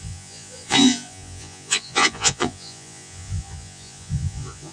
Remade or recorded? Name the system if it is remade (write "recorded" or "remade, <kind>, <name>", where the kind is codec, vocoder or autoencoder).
remade, vocoder, Vocos